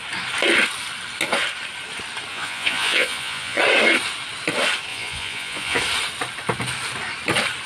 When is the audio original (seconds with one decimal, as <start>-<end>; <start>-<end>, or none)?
0.0-2.3; 3.6-4.9; 5.8-7.7